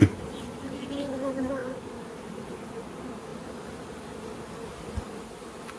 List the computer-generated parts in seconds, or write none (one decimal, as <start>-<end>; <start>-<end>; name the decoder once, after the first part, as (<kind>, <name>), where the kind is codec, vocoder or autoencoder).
1.6-2.9 (vocoder, BigVGAN v2)